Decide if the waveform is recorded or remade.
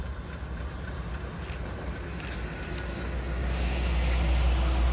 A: recorded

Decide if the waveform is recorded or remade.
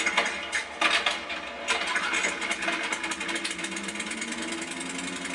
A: recorded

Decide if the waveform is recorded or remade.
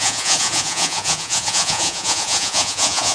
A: remade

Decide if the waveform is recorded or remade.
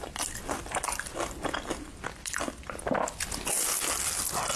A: recorded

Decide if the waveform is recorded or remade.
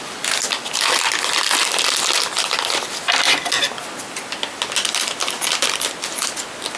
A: recorded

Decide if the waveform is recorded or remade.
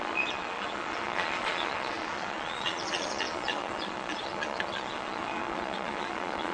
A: remade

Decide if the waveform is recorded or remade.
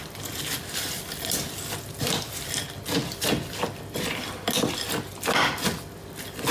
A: recorded